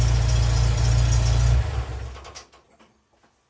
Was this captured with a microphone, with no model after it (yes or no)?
yes